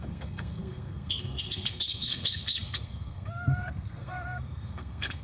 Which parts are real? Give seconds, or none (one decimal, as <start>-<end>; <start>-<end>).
none